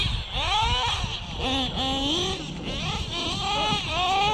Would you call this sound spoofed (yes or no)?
no